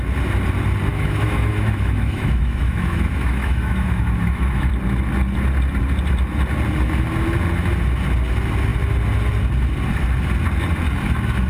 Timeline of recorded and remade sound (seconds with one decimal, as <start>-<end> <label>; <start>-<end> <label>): 0.0-0.9 recorded; 0.9-4.7 remade; 4.7-11.5 recorded